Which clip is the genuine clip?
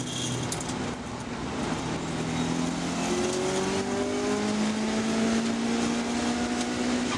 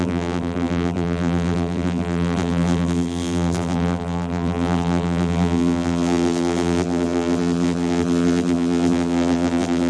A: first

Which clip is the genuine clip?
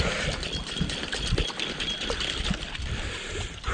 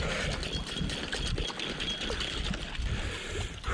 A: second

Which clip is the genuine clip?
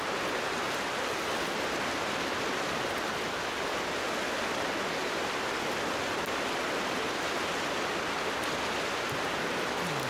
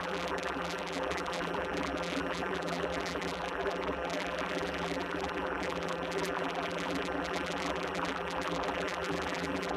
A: first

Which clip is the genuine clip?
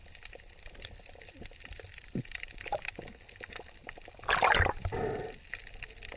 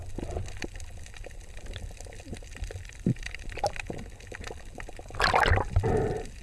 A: second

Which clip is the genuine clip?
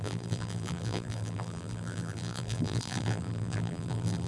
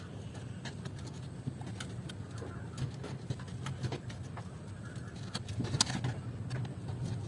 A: second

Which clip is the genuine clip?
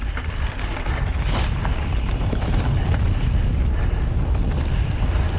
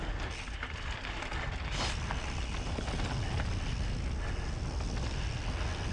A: second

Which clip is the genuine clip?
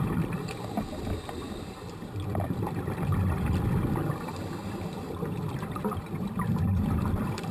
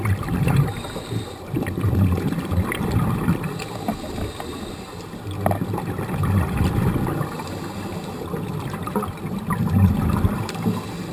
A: second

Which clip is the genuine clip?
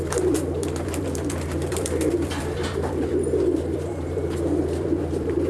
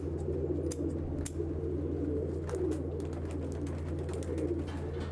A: second